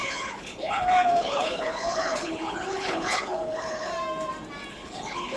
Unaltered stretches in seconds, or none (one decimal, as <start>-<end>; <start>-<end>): 3.9-4.7